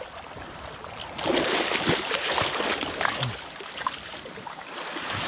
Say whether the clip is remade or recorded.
recorded